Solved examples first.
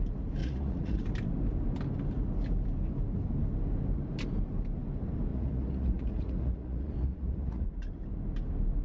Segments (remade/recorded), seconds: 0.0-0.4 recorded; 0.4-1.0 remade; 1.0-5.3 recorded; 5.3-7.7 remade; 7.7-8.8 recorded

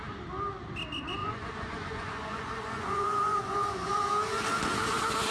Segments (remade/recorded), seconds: 0.0-1.2 recorded; 1.2-4.1 remade; 4.1-5.3 recorded

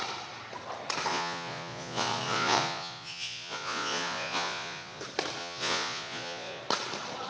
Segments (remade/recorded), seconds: 0.0-1.1 recorded; 1.1-5.0 remade; 5.0-5.4 recorded; 5.4-6.6 remade; 6.6-7.3 recorded